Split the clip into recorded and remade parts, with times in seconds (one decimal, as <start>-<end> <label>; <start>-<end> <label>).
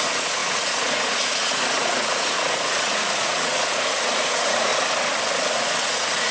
0.0-4.7 remade; 4.7-5.5 recorded; 5.5-6.3 remade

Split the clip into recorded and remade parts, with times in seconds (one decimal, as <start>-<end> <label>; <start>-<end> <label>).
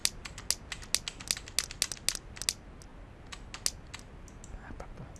0.0-5.2 recorded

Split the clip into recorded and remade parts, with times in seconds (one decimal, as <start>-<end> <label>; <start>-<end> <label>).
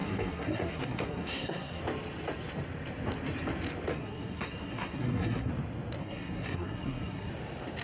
0.0-1.8 remade; 1.8-3.9 recorded; 3.9-5.5 remade; 5.5-6.0 recorded; 6.0-7.3 remade; 7.3-7.8 recorded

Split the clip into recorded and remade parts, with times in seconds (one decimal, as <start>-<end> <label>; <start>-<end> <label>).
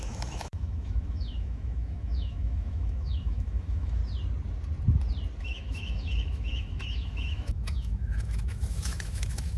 0.0-4.0 remade; 4.0-5.4 recorded; 5.4-9.6 remade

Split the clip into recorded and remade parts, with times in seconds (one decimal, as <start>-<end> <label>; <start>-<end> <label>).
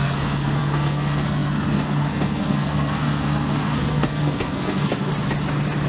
0.0-5.1 remade; 5.1-5.9 recorded